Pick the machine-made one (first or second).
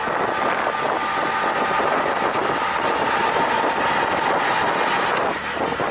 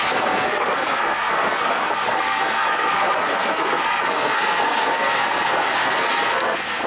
second